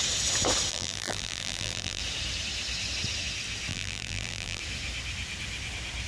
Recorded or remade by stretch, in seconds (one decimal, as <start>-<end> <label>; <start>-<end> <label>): 0.0-0.7 recorded; 0.7-2.0 remade; 2.0-3.7 recorded; 3.7-4.6 remade; 4.6-6.1 recorded

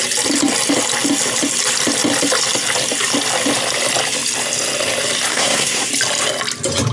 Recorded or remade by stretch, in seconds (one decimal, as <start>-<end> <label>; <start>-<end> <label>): 0.0-5.3 recorded; 5.3-5.9 remade; 5.9-6.9 recorded

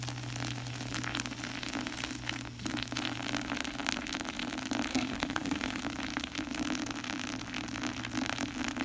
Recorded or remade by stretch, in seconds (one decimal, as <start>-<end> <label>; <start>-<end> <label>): 0.0-4.9 recorded; 4.9-5.8 remade; 5.8-8.8 recorded